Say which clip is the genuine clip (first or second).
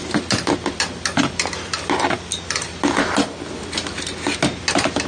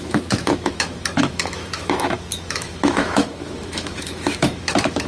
first